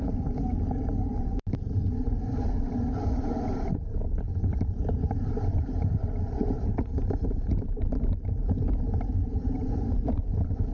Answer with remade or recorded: remade